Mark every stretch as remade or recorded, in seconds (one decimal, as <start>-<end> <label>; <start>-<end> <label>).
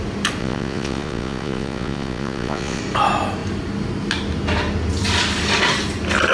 0.0-0.4 recorded; 0.4-2.8 remade; 2.8-6.3 recorded